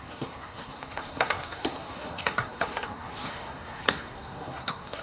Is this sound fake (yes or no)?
yes